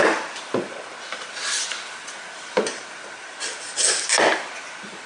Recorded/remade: recorded